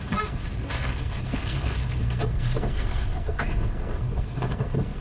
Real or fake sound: fake